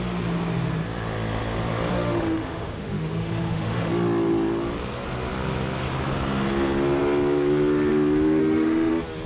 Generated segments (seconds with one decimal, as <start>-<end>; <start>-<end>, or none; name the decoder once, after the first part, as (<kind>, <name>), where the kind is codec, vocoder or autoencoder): 1.9-3.9 (autoencoder, DAC-VAE); 8.4-8.9